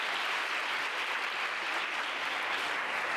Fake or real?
real